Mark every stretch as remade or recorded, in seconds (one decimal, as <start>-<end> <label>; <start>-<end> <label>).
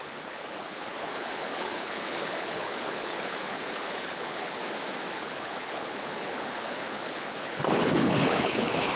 0.0-4.6 remade; 4.6-5.1 recorded; 5.1-9.0 remade